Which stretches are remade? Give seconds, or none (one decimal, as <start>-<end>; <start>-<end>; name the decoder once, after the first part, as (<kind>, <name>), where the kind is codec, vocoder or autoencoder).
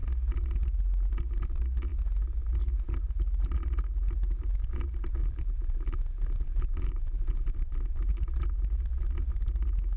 5.2-8.0 (vocoder, BigVGAN v2)